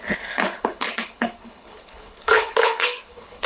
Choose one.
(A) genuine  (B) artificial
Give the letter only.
B